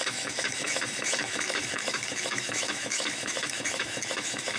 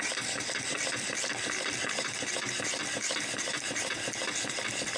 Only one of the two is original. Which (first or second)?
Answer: second